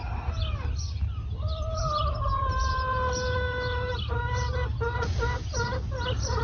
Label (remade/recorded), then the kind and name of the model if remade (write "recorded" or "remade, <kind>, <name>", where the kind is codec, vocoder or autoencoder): recorded